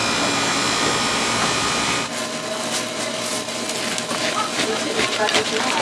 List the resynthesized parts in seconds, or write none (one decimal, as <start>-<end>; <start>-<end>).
none